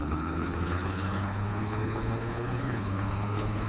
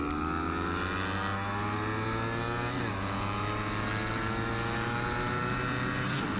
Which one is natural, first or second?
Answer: second